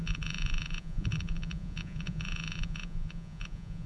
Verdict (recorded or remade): remade